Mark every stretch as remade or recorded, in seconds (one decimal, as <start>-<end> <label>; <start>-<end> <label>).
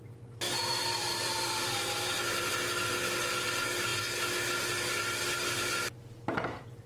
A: 0.0-0.8 recorded; 0.8-2.5 remade; 2.5-6.9 recorded